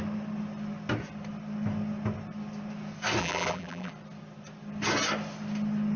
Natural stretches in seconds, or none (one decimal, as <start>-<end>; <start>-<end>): 0.0-3.2; 3.9-6.0